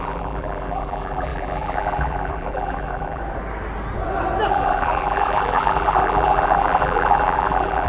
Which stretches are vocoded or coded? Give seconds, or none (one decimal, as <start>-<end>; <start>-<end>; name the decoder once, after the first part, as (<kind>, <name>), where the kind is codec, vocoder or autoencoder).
0.0-3.2 (vocoder, BigVGAN v2); 4.5-7.9

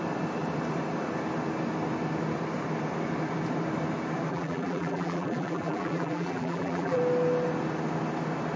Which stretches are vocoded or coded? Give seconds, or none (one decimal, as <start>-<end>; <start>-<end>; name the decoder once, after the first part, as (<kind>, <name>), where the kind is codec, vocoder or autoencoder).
4.3-7.0 (vocoder, BigVGAN v2)

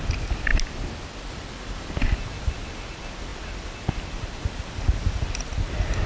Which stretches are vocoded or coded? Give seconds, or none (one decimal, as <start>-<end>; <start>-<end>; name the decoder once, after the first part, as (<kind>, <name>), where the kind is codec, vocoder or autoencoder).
0.0-0.5 (vocoder, BigVGAN v2); 1.3-6.1

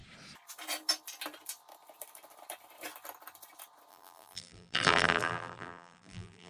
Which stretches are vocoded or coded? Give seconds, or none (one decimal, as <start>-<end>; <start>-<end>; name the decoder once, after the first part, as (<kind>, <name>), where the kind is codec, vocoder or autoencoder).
3.9-6.5 (vocoder, BigVGAN v2)

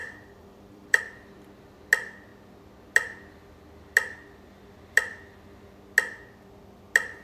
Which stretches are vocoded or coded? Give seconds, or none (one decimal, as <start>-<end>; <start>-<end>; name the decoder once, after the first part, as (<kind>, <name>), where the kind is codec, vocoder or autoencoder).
0.0-1.0 (vocoder, BigVGAN v2)

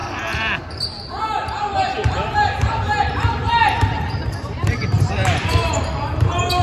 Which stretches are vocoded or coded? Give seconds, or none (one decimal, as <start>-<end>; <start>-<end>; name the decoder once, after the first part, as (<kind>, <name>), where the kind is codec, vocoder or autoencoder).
4.0-6.6 (vocoder, BigVGAN v2)